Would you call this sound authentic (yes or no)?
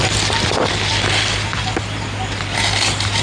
yes